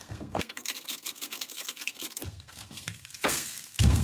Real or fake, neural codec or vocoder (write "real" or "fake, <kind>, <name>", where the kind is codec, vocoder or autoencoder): fake, codec, SNAC